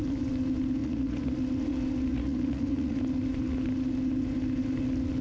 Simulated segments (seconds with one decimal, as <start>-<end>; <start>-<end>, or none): 0.8-1.3; 2.1-3.0